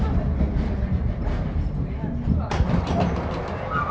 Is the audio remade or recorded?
recorded